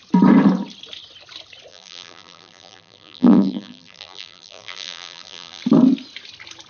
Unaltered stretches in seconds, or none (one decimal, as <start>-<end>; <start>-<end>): 0.0-1.7; 5.6-6.7